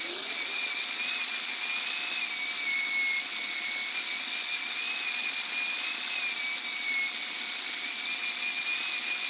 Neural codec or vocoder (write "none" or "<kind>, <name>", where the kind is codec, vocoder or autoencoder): none